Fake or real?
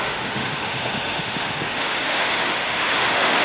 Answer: fake